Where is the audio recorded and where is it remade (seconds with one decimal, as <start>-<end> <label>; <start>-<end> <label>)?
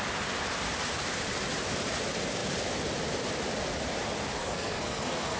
0.0-4.4 recorded; 4.4-5.4 remade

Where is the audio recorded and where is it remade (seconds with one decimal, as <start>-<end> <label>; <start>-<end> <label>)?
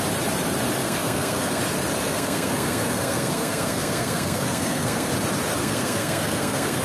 0.0-0.8 recorded; 0.8-1.6 remade; 1.6-2.0 recorded; 2.0-5.1 remade; 5.1-5.6 recorded; 5.6-6.8 remade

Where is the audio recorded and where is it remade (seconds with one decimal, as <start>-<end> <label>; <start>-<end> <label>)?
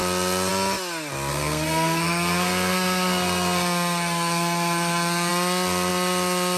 0.0-1.3 recorded; 1.3-5.3 remade; 5.3-6.6 recorded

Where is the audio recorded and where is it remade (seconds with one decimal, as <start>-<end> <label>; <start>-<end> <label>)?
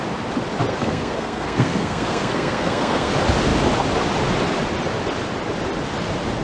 0.0-0.7 recorded; 0.7-3.1 remade; 3.1-6.4 recorded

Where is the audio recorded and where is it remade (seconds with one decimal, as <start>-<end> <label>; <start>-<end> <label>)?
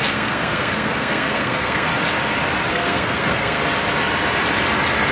0.0-1.9 remade; 1.9-2.7 recorded; 2.7-3.6 remade; 3.6-5.1 recorded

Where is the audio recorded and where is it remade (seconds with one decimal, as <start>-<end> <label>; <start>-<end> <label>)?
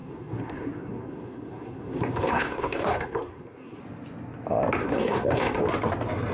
0.0-3.8 remade; 3.8-4.8 recorded; 4.8-5.6 remade; 5.6-6.3 recorded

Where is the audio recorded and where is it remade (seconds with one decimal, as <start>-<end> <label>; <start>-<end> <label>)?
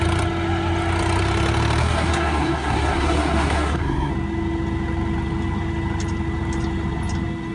0.0-1.8 recorded; 1.8-4.1 remade; 4.1-7.5 recorded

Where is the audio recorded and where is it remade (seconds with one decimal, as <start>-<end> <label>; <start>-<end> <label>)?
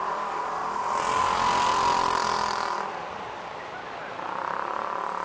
0.0-5.2 recorded